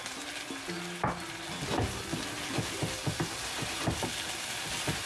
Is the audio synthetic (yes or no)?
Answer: no